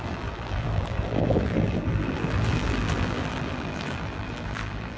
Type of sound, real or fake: fake